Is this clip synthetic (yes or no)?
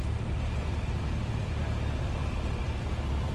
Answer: no